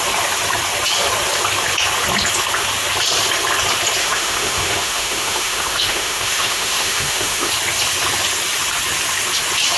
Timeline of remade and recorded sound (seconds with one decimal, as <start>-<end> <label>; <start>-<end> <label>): 0.0-4.0 recorded; 4.0-7.5 remade; 7.5-9.8 recorded